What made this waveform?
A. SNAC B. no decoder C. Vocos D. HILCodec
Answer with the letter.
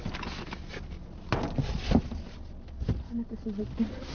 B